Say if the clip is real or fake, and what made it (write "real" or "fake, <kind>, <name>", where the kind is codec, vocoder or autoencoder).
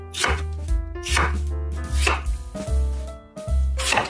real